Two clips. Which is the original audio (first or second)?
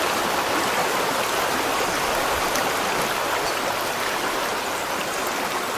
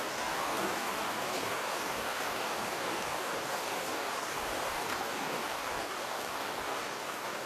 first